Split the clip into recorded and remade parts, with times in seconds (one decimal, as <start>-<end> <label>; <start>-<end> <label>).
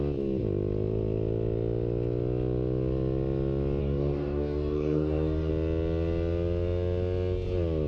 0.0-3.8 recorded; 3.8-5.5 remade; 5.5-7.9 recorded